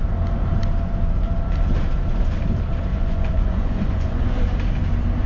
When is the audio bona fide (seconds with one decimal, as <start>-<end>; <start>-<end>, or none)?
0.0-2.9; 4.4-5.3